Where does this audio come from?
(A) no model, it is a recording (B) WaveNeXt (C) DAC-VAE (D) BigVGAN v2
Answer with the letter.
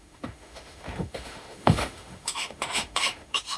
C